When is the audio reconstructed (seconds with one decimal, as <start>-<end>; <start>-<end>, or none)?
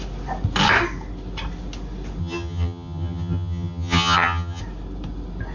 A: 2.2-4.6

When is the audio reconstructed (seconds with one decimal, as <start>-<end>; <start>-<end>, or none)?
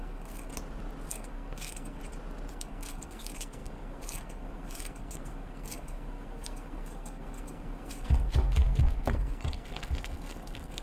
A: 0.0-0.5; 1.1-2.0; 2.5-10.8